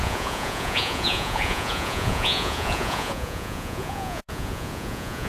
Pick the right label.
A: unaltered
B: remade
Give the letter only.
B